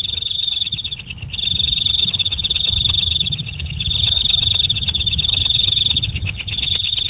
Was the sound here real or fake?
fake